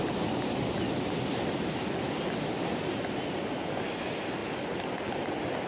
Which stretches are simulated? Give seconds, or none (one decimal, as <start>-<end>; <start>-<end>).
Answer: none